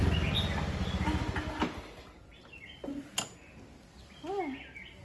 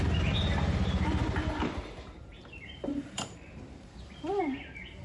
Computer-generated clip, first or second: second